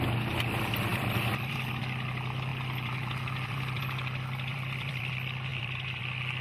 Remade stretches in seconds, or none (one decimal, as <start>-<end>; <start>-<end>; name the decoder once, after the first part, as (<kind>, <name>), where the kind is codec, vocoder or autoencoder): 0.9-1.8 (vocoder, BigVGAN v2); 2.5-3.8; 4.5-5.1; 5.5-6.0